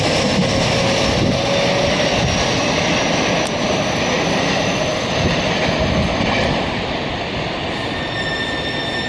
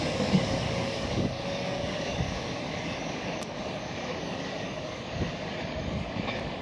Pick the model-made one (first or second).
second